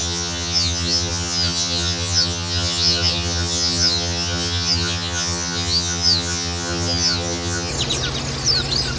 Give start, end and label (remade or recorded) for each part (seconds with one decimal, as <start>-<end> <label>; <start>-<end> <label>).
0.0-7.7 remade; 7.7-9.0 recorded